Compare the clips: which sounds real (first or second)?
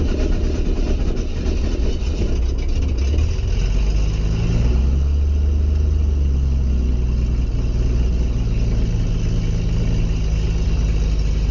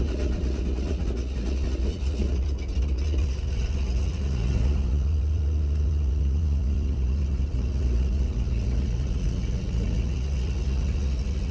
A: first